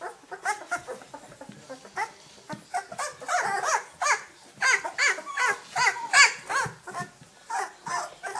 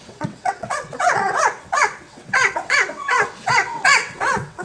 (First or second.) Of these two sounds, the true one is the first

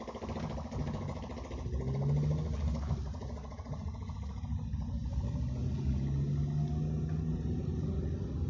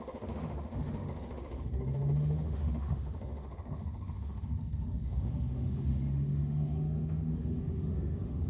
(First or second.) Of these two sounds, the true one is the first